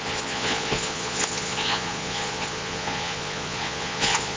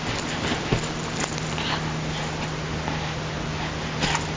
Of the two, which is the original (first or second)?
second